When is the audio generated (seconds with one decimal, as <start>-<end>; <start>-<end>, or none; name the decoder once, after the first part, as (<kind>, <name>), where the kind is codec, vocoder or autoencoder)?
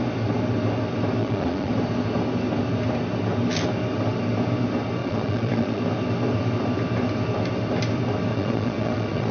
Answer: 1.2-1.7 (vocoder, Vocos); 5.0-5.8; 8.3-9.3